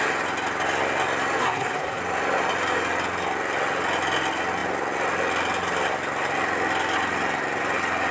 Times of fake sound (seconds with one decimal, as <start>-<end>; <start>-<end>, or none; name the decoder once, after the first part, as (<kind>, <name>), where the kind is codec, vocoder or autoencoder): 1.4-2.0 (codec, SNAC)